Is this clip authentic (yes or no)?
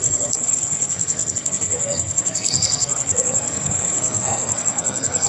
no